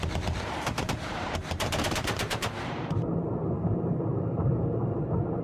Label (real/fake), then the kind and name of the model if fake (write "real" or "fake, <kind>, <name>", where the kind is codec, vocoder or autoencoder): fake, vocoder, BigVGAN v2